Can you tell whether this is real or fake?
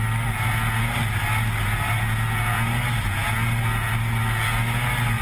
real